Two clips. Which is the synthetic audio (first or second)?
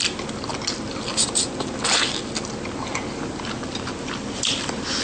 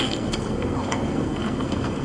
second